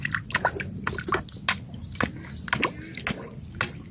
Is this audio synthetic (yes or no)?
no